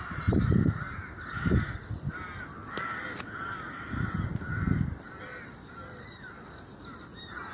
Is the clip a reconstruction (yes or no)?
no